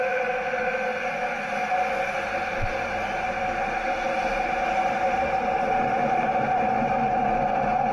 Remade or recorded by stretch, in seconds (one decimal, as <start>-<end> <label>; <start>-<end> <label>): 0.0-4.8 recorded; 4.8-7.2 remade; 7.2-7.9 recorded